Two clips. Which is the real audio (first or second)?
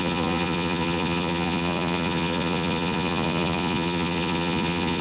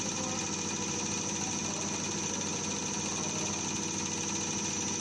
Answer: second